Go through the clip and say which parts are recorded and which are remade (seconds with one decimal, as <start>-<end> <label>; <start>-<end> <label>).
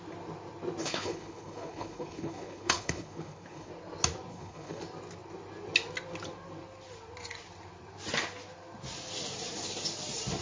0.0-0.8 recorded; 0.8-3.7 remade; 3.7-4.3 recorded; 4.3-4.8 remade; 4.8-10.4 recorded